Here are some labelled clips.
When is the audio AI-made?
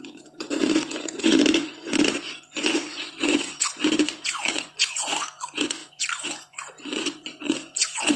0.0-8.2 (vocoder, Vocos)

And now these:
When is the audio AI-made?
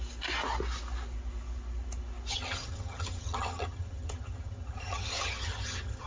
2.3-6.1 (vocoder, HiFi-GAN)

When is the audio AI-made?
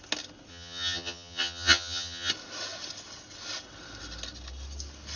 0.5-2.3 (vocoder, HiFi-GAN)